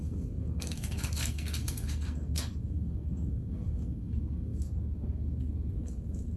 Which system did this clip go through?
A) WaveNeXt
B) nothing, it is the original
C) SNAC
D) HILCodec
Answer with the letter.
C